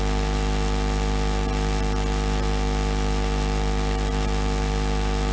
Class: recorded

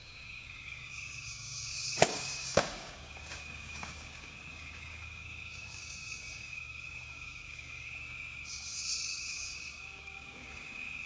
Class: remade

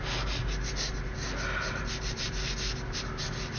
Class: recorded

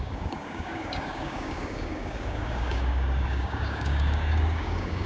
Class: remade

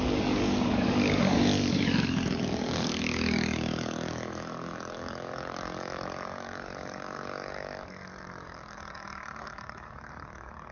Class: remade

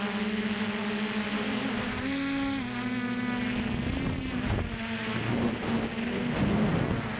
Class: recorded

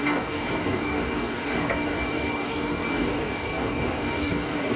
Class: remade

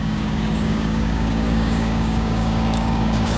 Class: remade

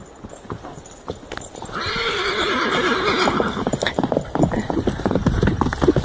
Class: recorded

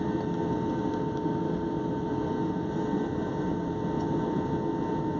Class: recorded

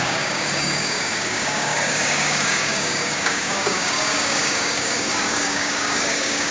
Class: remade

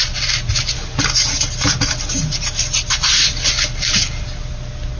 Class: recorded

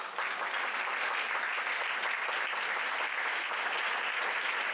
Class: recorded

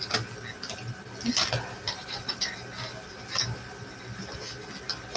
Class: recorded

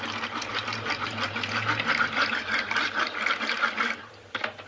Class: recorded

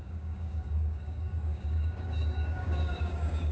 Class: remade